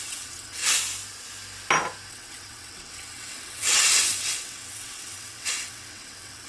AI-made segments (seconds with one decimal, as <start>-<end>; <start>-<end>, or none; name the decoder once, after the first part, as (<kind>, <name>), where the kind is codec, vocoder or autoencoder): 0.0-0.6 (vocoder, WaveNeXt); 2.1-6.5